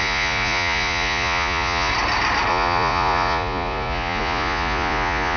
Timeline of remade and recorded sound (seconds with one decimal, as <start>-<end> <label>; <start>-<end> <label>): 0.0-1.9 remade; 1.9-2.5 recorded; 2.5-5.4 remade